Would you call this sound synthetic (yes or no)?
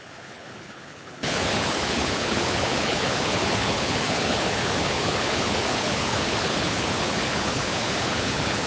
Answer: yes